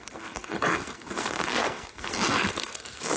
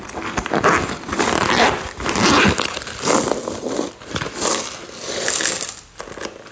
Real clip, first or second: second